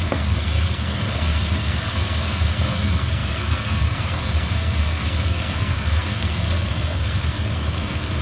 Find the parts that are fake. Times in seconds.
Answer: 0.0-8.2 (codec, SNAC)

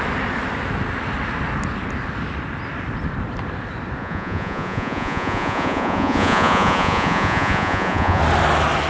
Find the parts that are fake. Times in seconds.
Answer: 4.0-8.2 (vocoder, Vocos)

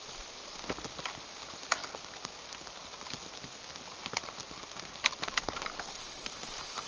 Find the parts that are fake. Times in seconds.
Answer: 0.0-0.4 (vocoder, BigVGAN v2); 1.2-1.8; 5.9-6.9

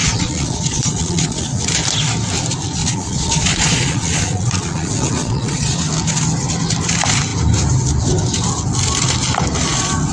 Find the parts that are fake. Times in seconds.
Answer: 0.0-1.6 (vocoder, Vocos); 2.8-5.8

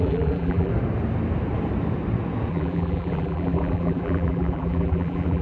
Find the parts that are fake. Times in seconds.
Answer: 0.0-0.7 (vocoder, BigVGAN v2); 2.5-5.4

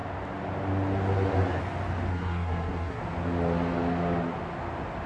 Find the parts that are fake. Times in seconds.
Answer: 2.1-3.0 (codec, SNAC)

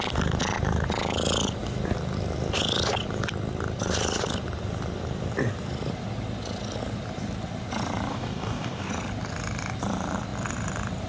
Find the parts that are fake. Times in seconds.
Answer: 8.1-8.9 (codec, DAC)

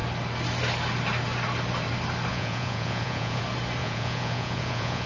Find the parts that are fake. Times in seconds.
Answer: 2.3-3.4 (vocoder, Vocos); 3.8-5.1